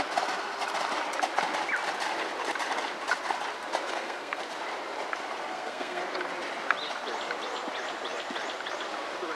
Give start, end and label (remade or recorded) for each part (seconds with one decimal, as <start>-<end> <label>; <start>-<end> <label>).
0.0-3.9 recorded; 3.9-4.4 remade; 4.4-5.5 recorded; 5.5-6.0 remade; 6.0-9.4 recorded